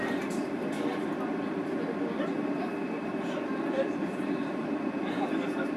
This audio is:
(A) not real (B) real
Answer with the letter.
A